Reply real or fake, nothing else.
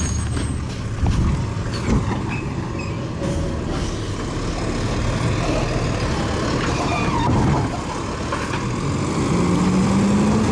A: real